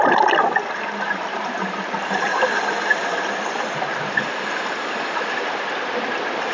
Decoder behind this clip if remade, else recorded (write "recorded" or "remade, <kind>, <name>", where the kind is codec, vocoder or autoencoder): recorded